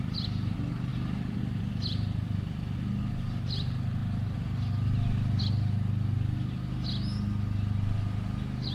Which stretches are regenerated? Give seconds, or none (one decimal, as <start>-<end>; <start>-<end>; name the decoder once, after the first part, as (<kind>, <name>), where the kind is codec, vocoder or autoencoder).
0.9-1.4 (vocoder, BigVGAN v2)